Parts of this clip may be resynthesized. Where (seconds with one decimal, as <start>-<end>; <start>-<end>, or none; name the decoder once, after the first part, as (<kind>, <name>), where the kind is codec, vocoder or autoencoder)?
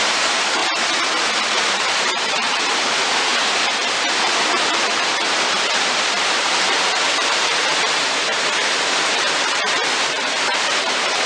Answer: 0.0-0.6 (vocoder, BigVGAN v2); 1.5-11.3